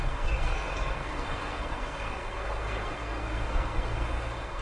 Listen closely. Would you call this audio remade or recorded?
remade